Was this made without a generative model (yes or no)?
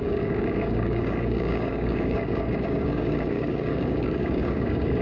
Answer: no